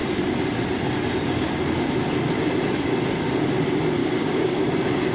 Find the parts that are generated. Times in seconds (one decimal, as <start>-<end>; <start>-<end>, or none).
4.0-4.6